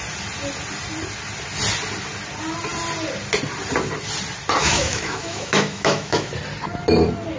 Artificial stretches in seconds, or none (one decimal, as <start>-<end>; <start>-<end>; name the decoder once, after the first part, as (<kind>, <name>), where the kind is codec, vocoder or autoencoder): 4.6-6.3 (autoencoder, DAC-VAE)